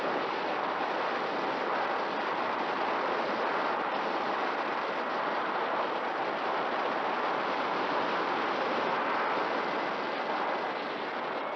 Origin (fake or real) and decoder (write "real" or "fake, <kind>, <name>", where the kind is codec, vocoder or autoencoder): real